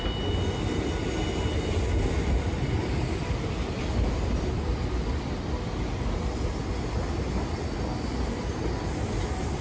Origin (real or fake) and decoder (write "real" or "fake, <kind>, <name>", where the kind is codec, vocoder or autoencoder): real